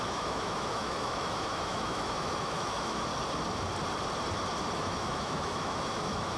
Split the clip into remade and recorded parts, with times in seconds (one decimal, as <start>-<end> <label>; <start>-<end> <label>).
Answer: 0.0-3.1 remade; 3.1-4.8 recorded; 4.8-6.4 remade